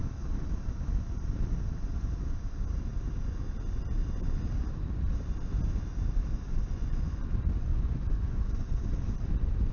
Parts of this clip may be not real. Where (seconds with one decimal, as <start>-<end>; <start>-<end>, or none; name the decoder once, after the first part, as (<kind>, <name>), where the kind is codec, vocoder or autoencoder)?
6.7-7.2 (vocoder, Vocos); 7.7-8.8